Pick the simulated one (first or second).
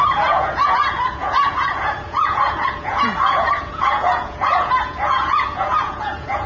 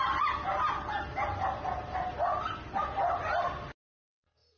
first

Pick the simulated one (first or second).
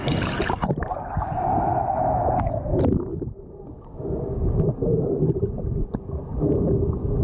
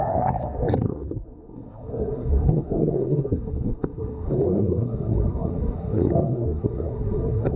second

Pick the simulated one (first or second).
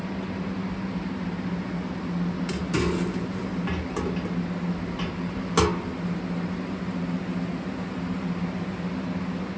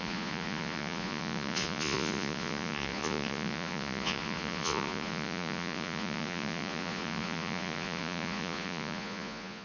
second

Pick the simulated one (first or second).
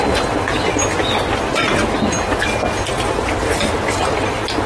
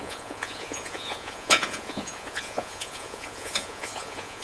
second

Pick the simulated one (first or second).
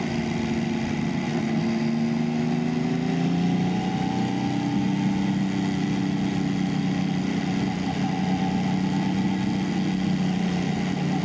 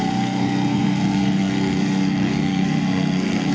second